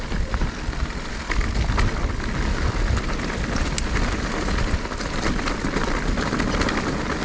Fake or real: real